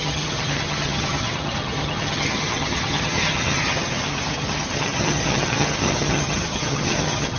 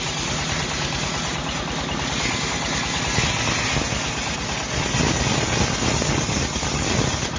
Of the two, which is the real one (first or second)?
second